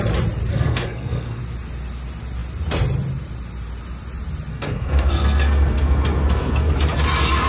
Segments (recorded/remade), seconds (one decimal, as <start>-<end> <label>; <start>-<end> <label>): 0.0-0.5 recorded; 0.5-1.4 remade; 1.4-4.5 recorded; 4.5-6.7 remade; 6.7-7.5 recorded